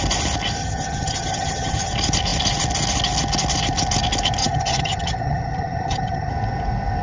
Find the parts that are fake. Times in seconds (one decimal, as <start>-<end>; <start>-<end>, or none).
0.6-1.9; 4.4-6.3